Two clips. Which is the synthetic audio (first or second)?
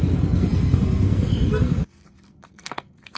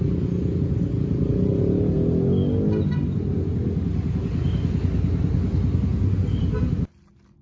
first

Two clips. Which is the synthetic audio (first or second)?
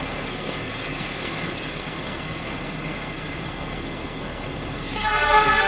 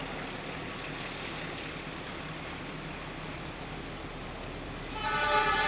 first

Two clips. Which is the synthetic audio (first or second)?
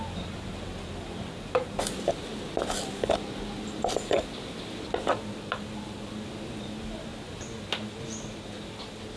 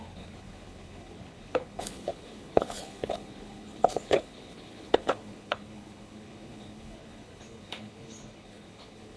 second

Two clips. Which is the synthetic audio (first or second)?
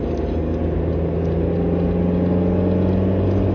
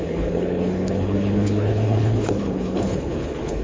second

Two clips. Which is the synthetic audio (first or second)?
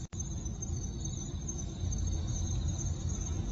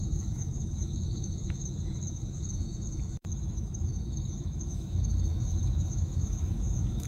second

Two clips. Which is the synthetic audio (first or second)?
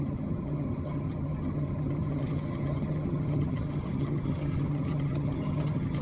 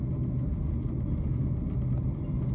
first